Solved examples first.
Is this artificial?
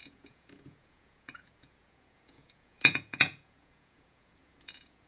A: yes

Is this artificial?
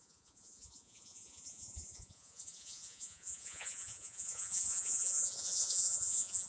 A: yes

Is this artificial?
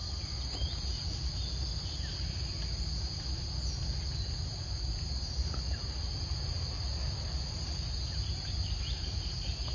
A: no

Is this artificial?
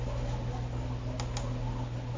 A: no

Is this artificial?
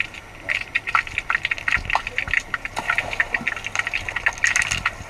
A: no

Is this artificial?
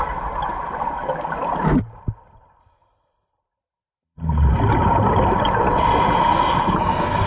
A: no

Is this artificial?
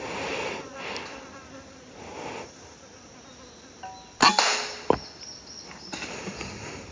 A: no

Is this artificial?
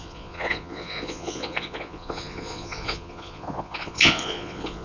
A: yes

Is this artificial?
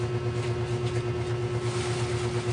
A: no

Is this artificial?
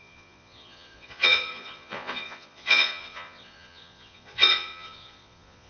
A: yes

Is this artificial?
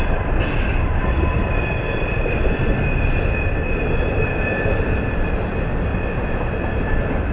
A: no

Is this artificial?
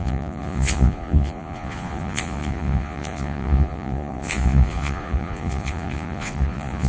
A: yes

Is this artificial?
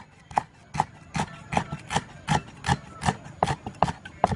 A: no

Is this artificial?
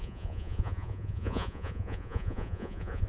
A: yes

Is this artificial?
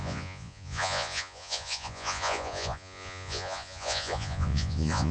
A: yes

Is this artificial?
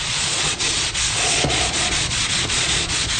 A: yes